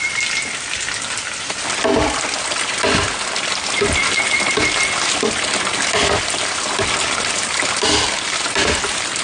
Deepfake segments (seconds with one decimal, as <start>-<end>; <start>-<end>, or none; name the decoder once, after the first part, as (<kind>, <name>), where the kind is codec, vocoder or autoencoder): none